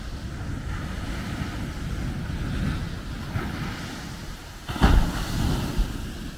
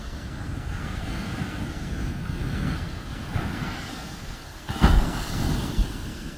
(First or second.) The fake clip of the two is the second